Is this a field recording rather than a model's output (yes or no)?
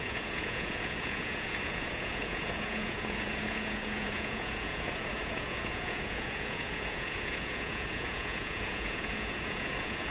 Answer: no